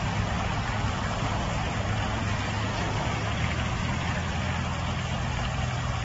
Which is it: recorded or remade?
recorded